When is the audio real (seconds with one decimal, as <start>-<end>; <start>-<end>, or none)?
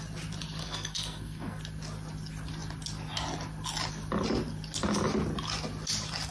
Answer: 0.0-0.6; 1.6-6.3